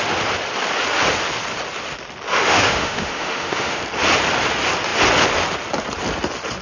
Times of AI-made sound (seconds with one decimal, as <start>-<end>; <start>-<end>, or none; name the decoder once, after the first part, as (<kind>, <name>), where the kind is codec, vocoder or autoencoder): 2.3-3.8 (autoencoder, DAC-VAE)